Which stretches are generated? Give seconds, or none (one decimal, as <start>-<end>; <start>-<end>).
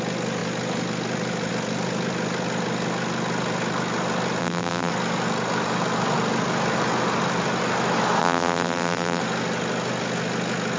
4.4-4.9; 8.2-9.2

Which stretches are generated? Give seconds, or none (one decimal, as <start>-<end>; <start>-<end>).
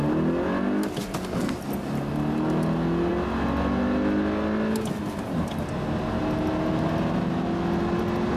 none